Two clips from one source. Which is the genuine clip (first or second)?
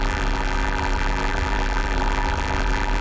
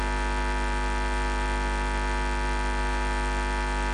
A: second